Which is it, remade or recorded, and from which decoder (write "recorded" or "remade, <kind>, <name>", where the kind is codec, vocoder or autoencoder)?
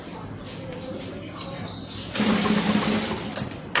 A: recorded